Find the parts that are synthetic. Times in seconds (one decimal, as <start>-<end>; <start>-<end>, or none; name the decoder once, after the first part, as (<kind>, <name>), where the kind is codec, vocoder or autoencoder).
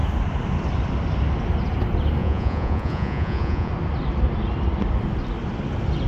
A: 2.2-3.7 (vocoder, Vocos)